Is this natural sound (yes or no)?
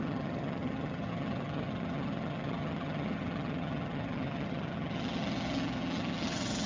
no